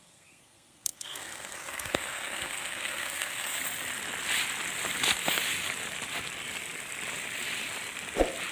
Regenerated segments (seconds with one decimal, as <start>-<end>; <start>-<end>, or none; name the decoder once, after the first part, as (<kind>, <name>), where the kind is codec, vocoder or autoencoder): 0.0-3.6 (codec, SNAC)

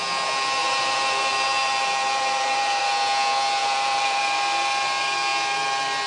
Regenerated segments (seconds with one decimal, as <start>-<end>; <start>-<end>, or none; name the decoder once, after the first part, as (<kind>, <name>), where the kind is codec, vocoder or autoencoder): 0.6-2.8 (vocoder, BigVGAN v2); 3.6-4.2

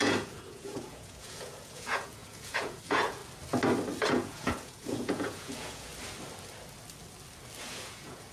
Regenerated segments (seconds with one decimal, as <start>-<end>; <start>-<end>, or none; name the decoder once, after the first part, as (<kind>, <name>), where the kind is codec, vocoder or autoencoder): 0.0-3.2 (vocoder, Vocos); 4.1-5.9; 7.6-8.3

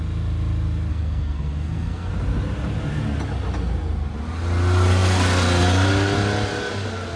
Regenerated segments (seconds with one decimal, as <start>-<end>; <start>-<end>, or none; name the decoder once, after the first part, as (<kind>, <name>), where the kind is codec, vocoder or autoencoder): 0.9-2.1 (codec, SNAC)

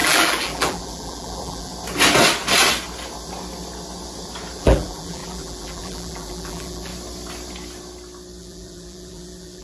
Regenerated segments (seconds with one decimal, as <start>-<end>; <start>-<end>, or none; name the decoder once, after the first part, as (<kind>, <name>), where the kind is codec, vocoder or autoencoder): 0.0-1.7 (vocoder, BigVGAN v2); 4.6-6.9; 8.4-9.6

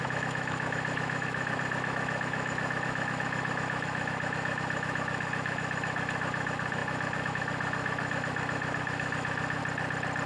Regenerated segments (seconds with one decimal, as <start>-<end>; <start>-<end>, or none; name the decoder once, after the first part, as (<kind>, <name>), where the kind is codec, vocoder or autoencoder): 0.0-9.6 (autoencoder, DAC-VAE)

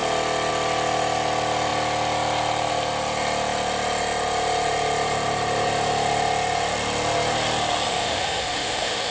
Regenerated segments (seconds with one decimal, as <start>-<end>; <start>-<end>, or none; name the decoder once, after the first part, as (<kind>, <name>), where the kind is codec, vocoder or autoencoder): 7.9-9.1 (autoencoder, DAC-VAE)

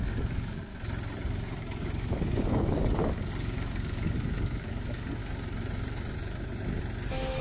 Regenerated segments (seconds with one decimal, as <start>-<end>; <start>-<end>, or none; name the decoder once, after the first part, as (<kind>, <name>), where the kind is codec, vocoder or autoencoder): 0.0-0.7 (codec, DAC); 1.6-5.2